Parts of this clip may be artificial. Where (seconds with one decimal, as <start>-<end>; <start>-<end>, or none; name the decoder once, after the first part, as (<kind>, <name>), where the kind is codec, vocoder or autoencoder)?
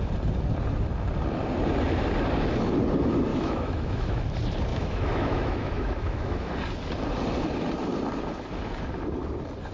3.3-4.2 (autoencoder, DAC-VAE); 4.7-6.5